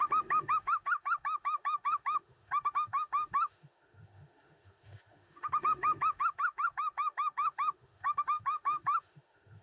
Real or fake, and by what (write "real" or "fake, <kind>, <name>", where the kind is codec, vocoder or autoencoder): fake, autoencoder, DAC-VAE